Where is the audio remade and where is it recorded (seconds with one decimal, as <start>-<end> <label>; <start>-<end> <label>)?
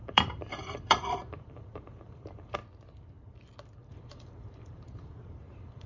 0.0-2.6 remade; 2.6-3.9 recorded; 3.9-5.9 remade